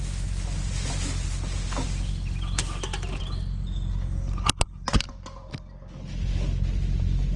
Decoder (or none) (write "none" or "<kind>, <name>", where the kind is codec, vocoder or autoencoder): none